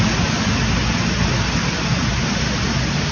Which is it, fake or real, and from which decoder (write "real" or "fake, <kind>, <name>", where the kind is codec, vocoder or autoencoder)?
real